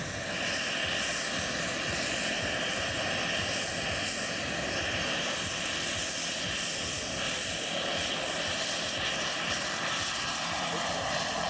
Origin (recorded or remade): recorded